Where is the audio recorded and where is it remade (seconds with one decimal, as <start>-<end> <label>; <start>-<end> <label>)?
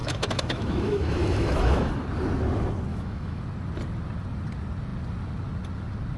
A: 0.0-1.9 remade; 1.9-2.9 recorded; 2.9-3.4 remade; 3.4-6.2 recorded